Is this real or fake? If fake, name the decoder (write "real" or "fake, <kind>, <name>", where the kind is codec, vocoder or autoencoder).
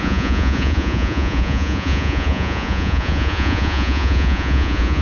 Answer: fake, vocoder, Vocos